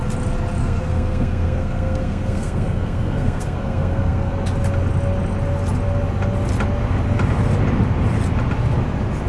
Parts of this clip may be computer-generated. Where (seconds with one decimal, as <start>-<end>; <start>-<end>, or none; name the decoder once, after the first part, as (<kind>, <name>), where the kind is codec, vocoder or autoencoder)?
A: 0.6-4.3 (codec, SNAC)

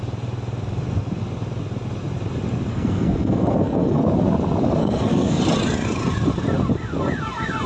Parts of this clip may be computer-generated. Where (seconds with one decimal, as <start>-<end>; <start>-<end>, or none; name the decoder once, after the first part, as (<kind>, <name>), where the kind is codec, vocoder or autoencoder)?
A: 2.7-4.0 (codec, SNAC); 4.8-5.4

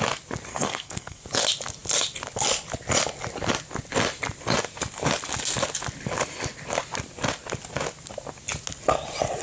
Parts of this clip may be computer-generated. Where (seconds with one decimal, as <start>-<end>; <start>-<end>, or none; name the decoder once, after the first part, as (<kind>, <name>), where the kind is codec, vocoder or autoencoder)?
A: 0.5-1.2 (codec, SNAC)

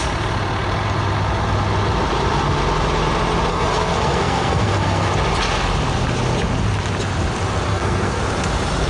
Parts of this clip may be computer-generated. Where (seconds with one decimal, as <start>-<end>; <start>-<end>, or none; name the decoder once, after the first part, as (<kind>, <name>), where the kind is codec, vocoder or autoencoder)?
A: 3.5-5.1 (codec, SNAC); 7.7-8.2